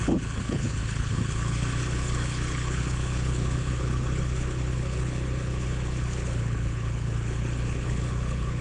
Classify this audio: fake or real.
fake